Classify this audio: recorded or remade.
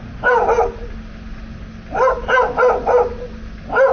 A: recorded